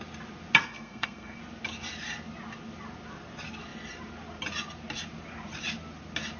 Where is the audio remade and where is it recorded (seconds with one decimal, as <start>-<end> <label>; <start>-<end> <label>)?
0.0-0.6 recorded; 0.6-1.4 remade; 1.4-6.4 recorded